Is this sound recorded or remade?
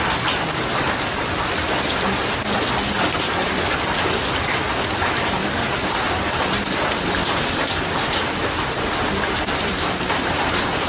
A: recorded